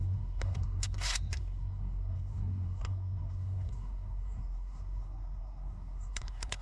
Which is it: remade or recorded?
remade